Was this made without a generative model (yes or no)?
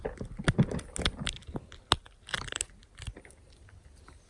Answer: yes